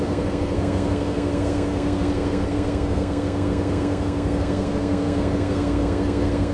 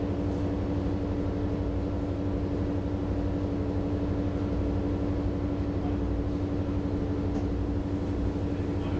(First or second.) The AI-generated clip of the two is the first